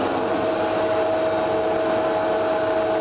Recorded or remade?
recorded